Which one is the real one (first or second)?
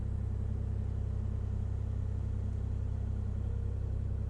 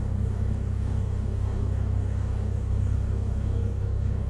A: first